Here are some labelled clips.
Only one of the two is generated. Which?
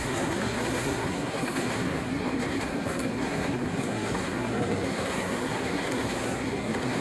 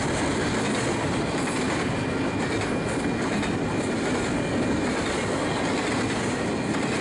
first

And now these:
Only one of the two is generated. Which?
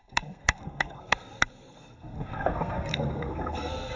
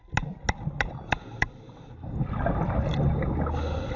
first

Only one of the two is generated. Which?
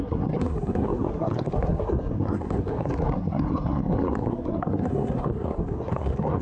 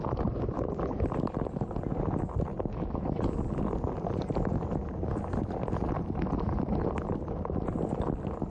first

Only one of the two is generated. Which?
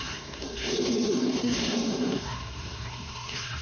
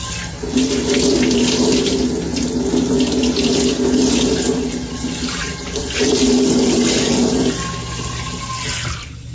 first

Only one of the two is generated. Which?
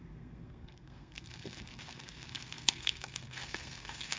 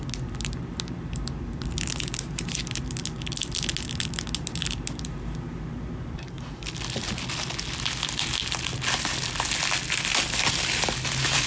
first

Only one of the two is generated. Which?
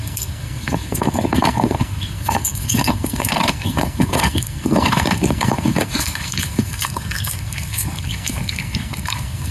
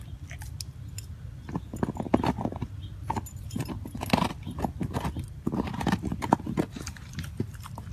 first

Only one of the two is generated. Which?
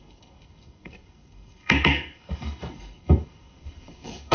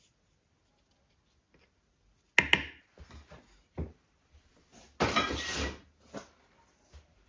first